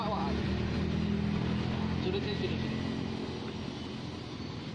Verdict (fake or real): real